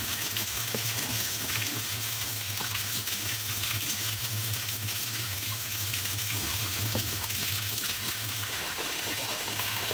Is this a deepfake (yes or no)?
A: yes